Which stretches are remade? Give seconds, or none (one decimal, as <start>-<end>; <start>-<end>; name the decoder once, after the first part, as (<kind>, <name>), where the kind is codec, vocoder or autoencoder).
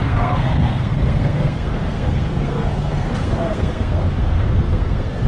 0.0-5.3 (codec, SNAC)